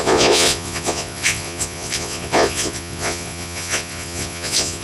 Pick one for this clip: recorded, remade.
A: remade